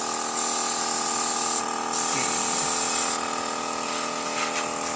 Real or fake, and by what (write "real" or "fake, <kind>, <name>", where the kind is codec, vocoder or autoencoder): real